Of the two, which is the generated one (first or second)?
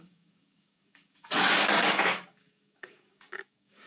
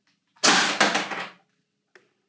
first